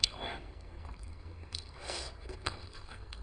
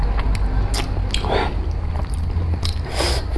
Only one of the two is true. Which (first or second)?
second